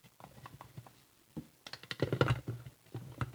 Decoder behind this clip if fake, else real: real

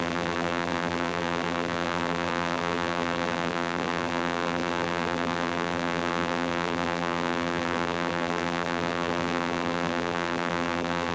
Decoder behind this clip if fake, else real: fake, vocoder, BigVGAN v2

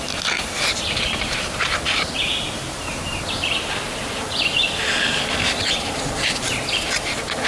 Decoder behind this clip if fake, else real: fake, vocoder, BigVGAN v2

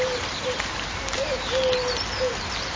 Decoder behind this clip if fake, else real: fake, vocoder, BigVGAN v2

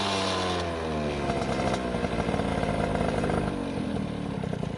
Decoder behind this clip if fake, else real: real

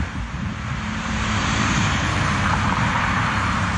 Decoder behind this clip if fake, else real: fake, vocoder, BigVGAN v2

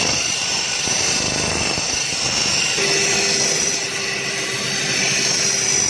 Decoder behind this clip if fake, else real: real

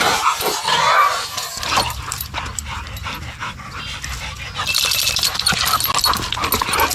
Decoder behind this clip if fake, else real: real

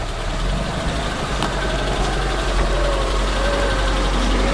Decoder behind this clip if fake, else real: real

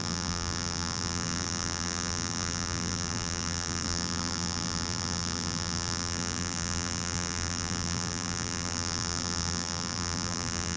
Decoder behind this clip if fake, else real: fake, vocoder, BigVGAN v2